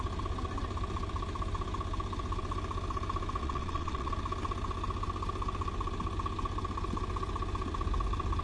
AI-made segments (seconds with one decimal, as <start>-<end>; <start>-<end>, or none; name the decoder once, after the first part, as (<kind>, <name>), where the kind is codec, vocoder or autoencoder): 3.4-4.1 (vocoder, Vocos)